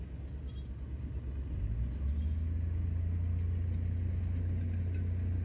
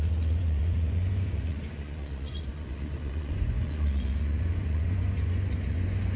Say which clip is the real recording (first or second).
first